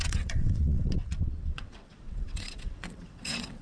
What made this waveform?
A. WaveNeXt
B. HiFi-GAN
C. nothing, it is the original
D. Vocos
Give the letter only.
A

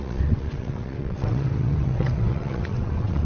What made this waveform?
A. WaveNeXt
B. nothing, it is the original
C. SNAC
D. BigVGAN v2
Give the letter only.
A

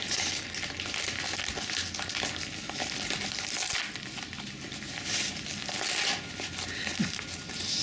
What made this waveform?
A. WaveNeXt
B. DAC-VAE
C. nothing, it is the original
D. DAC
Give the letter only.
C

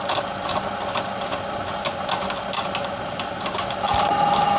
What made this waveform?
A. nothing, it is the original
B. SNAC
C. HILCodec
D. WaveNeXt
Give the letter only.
A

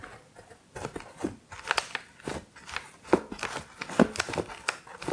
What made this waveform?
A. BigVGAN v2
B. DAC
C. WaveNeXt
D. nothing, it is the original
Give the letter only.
D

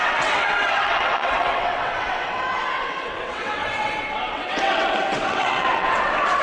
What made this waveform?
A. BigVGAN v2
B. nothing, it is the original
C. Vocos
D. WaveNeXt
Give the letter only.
D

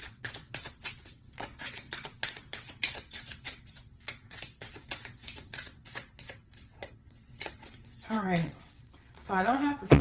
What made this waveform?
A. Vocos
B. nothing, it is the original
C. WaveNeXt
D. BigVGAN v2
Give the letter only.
C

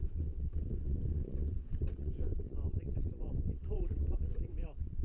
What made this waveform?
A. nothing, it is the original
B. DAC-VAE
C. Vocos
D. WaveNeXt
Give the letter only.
D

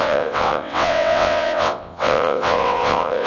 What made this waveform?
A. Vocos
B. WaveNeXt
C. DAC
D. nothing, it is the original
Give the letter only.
B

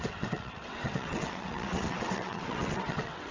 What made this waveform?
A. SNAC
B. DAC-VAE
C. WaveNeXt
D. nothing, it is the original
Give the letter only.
C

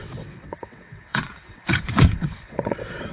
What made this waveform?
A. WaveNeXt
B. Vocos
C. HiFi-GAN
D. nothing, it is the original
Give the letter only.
A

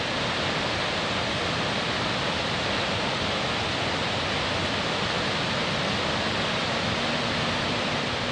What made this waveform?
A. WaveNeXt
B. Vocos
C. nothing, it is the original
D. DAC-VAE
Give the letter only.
C